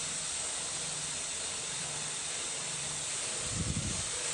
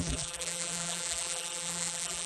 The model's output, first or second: second